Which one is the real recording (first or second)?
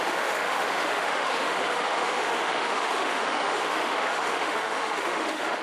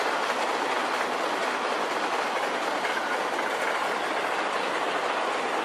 second